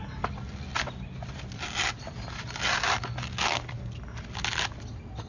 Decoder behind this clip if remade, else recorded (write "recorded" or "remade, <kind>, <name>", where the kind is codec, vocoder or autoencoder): recorded